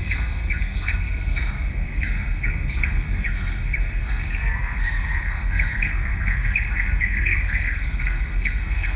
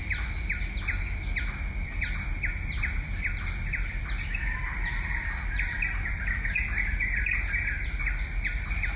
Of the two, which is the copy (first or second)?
first